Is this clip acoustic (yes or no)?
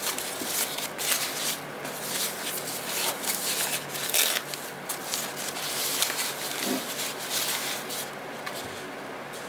yes